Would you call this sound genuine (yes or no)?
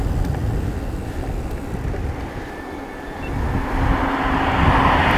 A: yes